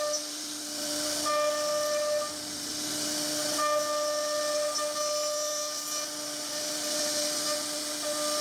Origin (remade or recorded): recorded